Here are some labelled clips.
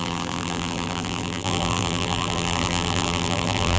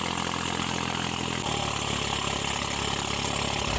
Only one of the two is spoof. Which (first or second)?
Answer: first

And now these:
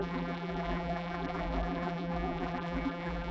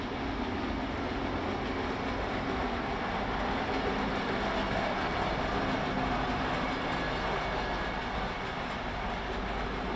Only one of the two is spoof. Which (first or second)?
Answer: first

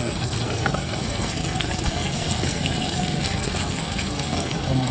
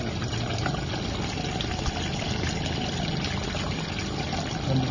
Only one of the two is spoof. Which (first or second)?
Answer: first